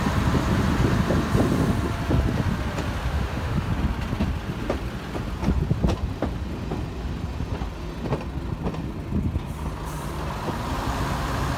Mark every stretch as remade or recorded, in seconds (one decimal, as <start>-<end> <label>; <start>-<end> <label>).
0.0-3.1 recorded; 3.1-3.7 remade; 3.7-11.6 recorded